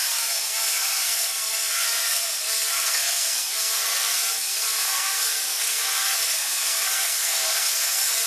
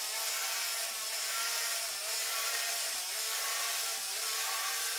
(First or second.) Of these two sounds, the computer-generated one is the first